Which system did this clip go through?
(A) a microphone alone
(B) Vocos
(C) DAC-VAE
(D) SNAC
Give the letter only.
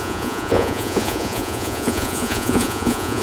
B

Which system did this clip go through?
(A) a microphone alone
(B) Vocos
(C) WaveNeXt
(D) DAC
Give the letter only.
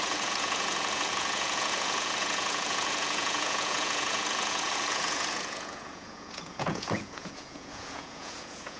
B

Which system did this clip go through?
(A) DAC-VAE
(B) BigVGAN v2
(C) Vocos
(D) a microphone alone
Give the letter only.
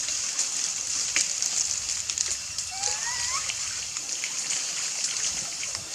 D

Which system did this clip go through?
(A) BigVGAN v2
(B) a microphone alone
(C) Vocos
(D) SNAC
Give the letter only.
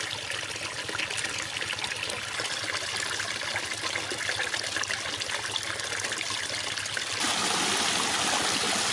B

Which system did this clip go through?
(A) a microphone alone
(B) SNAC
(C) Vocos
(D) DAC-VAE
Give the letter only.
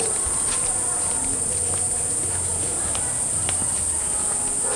A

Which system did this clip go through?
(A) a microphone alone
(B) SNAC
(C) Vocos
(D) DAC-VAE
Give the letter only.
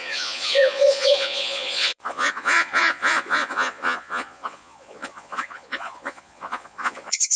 C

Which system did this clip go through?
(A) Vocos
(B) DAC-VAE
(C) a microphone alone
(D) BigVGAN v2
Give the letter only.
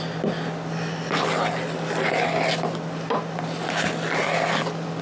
C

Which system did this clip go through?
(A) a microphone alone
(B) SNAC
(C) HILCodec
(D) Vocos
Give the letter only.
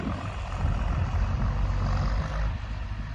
A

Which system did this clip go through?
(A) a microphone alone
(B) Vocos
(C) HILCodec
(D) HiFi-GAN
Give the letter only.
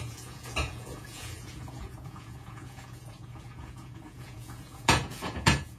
B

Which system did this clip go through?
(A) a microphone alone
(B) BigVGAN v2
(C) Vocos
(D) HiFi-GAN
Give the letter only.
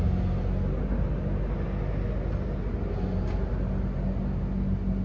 A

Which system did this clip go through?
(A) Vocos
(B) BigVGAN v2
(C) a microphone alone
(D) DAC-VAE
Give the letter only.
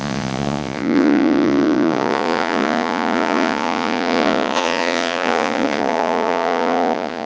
A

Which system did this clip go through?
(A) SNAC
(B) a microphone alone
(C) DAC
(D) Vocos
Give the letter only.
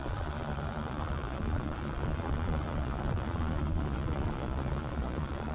D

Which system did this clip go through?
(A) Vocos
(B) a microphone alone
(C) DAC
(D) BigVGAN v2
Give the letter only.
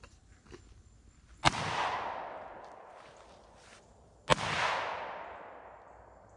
B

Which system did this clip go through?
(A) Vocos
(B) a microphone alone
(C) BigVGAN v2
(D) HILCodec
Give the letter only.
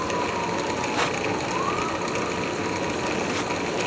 B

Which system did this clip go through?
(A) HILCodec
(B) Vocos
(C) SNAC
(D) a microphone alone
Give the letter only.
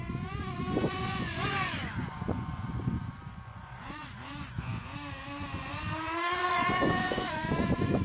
B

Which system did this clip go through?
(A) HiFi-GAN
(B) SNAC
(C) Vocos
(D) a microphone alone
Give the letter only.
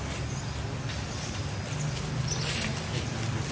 D